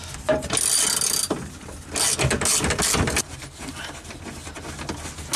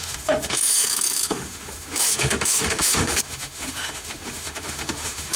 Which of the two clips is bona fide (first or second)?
first